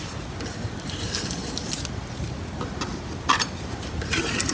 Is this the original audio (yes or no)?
yes